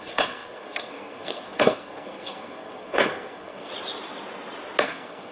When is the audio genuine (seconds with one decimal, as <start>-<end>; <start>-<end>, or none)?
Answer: 3.7-4.8